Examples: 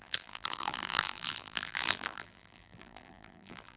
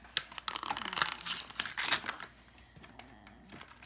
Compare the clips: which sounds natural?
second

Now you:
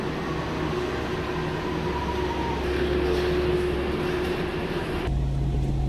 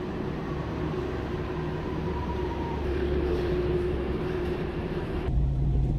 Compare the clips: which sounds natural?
first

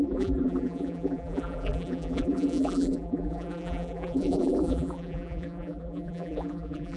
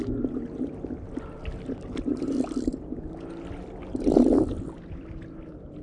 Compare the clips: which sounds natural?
second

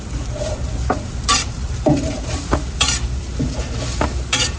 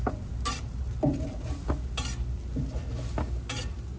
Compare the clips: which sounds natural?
second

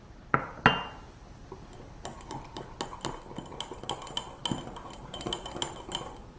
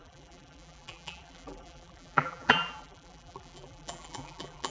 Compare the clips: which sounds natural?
first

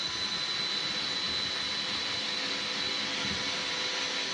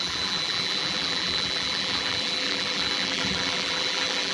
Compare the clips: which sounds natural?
first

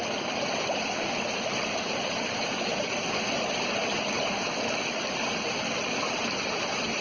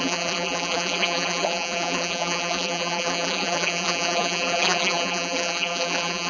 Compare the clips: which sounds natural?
first